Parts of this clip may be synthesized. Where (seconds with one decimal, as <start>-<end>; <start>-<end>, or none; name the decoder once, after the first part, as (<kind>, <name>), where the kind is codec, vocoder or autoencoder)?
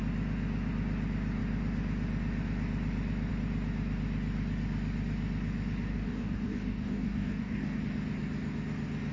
5.9-7.8 (codec, DAC)